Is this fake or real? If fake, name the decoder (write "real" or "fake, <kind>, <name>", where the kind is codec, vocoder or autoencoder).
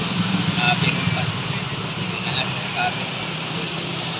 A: real